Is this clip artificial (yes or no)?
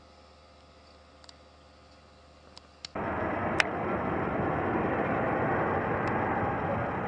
no